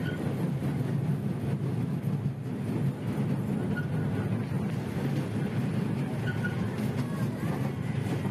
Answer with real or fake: real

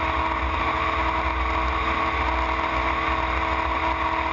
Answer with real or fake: real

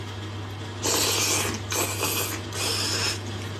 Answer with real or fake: real